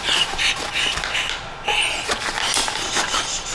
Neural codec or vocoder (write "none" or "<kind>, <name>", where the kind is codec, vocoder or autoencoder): none